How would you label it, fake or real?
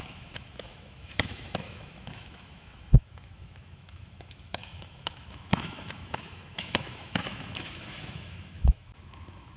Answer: fake